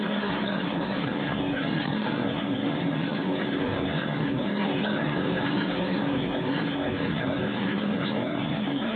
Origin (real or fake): fake